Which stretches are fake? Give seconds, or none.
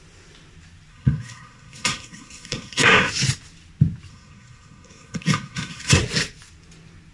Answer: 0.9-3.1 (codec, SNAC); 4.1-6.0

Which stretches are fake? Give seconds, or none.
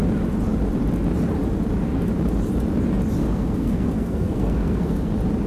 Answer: 3.2-5.1 (codec, SNAC)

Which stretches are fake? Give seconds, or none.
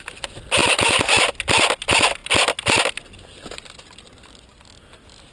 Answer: none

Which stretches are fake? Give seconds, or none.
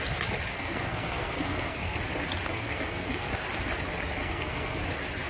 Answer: 0.5-2.0 (codec, SNAC); 2.5-3.3; 4.2-4.8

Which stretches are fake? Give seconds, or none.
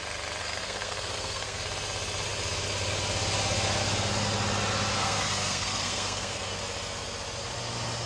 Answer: 0.4-1.6 (codec, SNAC); 5.0-6.6